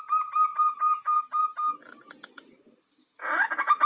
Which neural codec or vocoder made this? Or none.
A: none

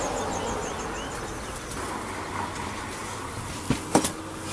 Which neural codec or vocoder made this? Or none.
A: none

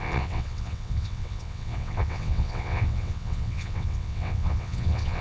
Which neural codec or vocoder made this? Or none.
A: vocoder, WaveNeXt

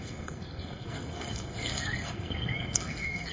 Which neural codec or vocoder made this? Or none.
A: codec, SNAC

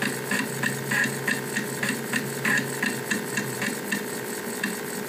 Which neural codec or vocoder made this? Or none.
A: none